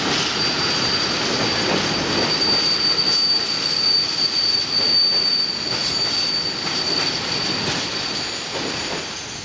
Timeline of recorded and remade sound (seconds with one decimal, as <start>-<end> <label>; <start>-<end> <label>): 0.0-9.4 recorded